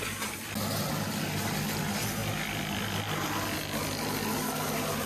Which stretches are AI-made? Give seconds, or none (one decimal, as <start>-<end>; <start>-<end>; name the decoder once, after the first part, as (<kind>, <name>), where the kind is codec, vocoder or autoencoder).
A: none